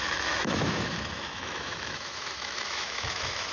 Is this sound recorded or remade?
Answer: remade